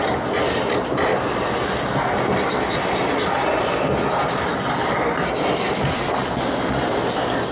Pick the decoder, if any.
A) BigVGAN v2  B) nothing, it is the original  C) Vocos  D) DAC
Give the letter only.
B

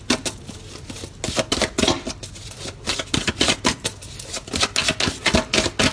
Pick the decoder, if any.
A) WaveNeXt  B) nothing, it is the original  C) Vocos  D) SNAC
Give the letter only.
B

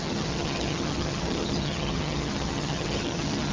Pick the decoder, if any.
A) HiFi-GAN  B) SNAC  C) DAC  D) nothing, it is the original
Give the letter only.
A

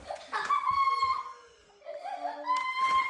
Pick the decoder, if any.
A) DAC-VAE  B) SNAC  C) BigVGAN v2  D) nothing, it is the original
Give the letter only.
D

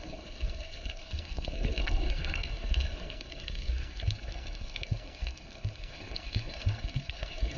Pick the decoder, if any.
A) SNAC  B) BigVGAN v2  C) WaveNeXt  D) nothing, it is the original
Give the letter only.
A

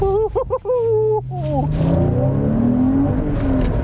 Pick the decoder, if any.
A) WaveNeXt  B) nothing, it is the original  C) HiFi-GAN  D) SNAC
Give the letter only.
B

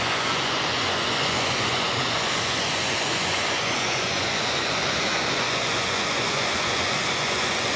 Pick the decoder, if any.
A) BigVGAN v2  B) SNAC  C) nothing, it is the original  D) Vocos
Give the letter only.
D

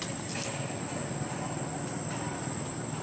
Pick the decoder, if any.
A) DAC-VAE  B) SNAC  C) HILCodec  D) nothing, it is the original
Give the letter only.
D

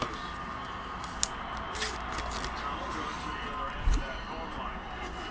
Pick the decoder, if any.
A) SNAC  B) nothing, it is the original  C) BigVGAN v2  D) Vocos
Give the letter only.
B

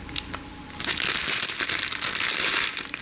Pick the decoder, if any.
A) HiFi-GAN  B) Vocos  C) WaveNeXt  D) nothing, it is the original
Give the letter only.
D